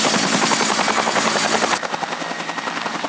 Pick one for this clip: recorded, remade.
recorded